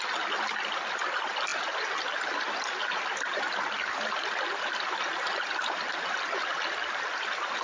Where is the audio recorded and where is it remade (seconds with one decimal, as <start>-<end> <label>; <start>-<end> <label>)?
0.0-7.6 recorded